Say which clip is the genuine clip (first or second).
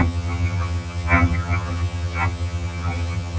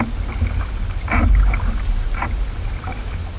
second